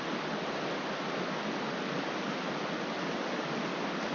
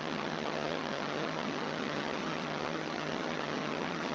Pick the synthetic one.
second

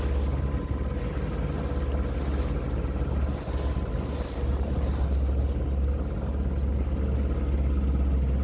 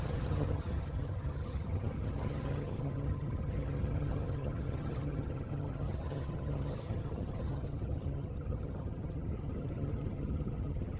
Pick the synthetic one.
second